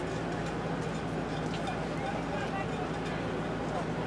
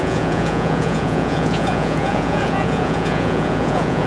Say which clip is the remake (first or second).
second